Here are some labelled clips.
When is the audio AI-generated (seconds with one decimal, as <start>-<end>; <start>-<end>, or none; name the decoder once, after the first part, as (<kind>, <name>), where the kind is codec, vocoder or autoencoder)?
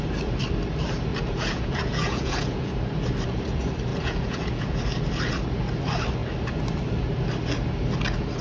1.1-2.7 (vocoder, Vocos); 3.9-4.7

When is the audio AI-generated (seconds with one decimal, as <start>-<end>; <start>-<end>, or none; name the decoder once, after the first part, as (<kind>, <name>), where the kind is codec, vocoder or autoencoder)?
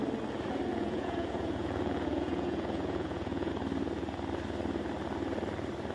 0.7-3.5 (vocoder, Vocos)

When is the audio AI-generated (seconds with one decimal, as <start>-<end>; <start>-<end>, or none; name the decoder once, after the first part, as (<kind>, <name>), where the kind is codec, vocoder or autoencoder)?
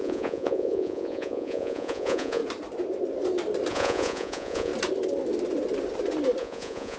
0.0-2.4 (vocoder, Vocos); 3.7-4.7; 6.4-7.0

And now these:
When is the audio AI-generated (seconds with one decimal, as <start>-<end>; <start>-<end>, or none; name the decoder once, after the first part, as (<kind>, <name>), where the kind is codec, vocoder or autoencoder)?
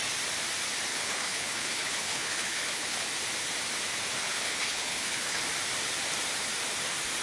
0.9-3.1 (codec, HILCodec); 4.2-5.4